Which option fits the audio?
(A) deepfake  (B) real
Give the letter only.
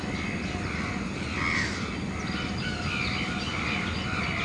B